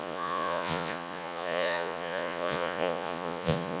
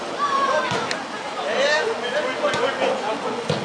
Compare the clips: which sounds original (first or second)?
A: second